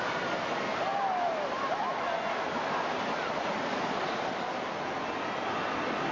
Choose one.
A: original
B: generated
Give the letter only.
A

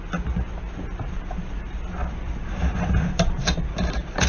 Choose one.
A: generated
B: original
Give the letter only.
B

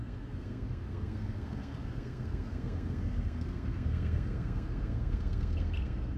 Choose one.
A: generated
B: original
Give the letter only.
A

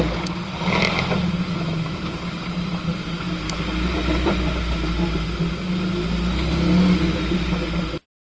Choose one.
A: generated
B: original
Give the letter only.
B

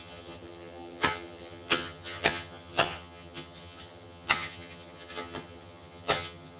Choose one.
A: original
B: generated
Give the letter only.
B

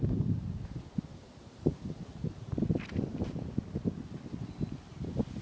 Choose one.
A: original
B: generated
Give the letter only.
A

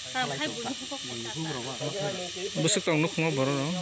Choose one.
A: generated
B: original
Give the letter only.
B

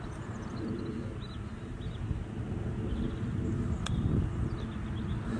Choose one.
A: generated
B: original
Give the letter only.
B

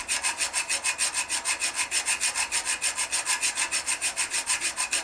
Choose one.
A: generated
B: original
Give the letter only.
B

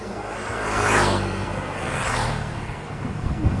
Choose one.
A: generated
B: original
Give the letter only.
A